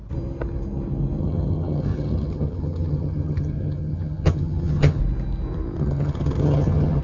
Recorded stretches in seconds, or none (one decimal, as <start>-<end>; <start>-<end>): 0.0-1.2; 5.0-5.8

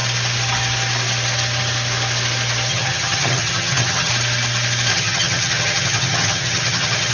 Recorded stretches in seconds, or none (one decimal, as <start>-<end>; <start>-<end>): 0.0-2.7; 4.1-4.9

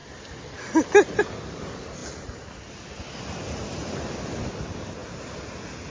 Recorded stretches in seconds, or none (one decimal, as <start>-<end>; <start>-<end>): 0.0-5.9

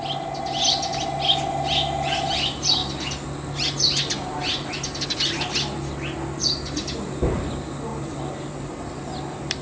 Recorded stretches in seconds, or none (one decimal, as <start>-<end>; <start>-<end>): 0.0-9.6